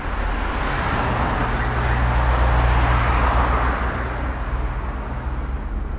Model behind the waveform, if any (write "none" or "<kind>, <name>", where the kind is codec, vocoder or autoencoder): none